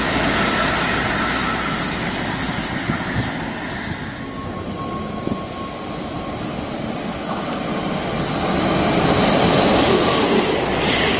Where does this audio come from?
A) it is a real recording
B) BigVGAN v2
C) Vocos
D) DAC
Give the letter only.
A